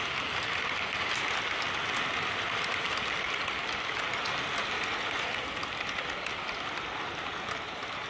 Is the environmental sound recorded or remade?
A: recorded